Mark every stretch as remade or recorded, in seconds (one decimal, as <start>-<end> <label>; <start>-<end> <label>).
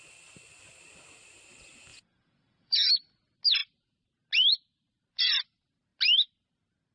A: 0.0-1.9 recorded; 1.9-2.9 remade; 2.9-6.9 recorded